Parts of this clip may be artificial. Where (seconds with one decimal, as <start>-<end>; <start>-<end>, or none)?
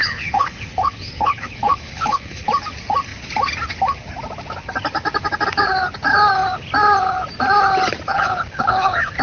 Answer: 0.0-2.5; 8.1-9.2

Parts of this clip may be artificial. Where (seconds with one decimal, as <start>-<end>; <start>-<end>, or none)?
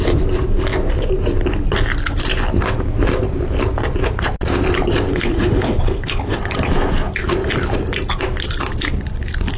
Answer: 5.1-6.4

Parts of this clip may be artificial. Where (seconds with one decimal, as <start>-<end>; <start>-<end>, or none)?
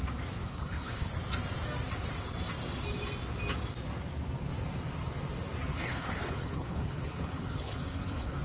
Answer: 0.4-1.1; 5.7-8.4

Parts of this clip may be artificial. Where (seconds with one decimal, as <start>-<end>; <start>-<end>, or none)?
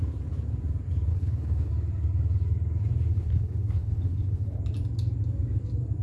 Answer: 1.1-1.7; 3.1-4.6